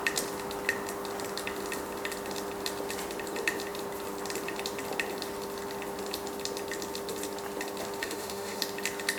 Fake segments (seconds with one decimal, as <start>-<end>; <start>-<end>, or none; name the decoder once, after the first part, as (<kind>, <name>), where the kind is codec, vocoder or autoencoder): 8.0-8.6 (autoencoder, DAC-VAE)